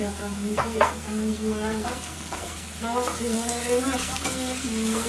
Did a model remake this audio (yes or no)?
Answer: yes